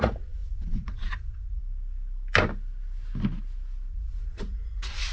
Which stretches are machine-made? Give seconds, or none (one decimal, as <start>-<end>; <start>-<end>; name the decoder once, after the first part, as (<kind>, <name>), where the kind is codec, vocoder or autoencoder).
0.0-1.6 (vocoder, Vocos); 3.9-5.1